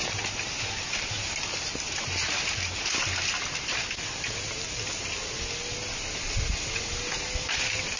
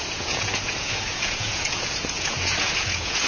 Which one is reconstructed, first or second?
second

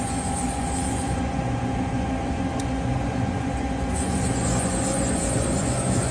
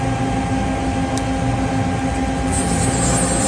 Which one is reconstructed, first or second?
first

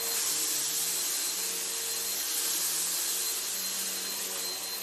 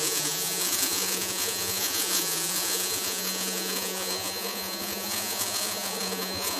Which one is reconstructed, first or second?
second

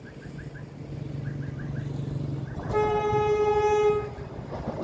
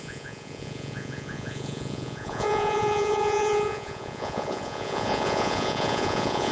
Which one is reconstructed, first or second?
second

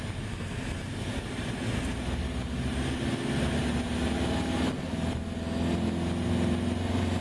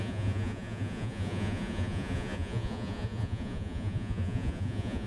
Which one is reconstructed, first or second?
second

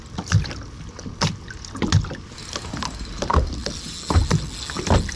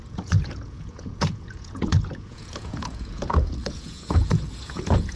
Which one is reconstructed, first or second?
second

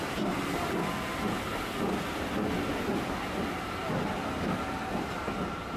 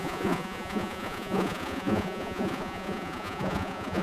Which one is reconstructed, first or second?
second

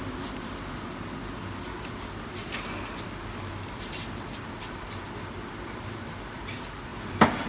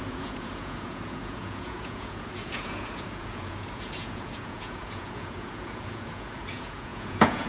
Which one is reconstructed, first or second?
second